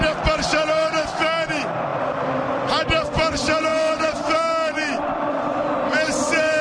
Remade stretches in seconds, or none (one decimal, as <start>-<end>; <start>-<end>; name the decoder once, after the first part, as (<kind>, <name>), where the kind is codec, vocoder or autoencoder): 1.9-2.7 (vocoder, BigVGAN v2)